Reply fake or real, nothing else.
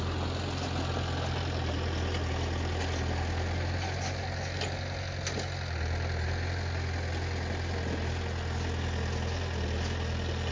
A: real